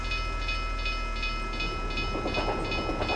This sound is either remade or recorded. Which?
recorded